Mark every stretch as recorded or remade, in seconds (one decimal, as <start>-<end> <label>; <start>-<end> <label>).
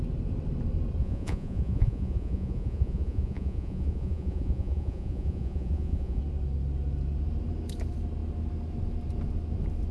0.0-1.0 recorded; 1.0-6.2 remade; 6.2-9.9 recorded